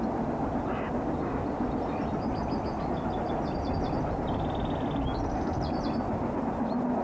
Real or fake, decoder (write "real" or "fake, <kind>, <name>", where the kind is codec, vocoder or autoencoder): real